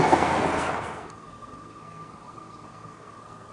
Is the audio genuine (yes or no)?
no